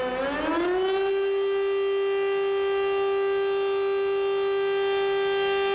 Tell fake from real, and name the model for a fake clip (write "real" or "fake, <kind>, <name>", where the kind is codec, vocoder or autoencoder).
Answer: real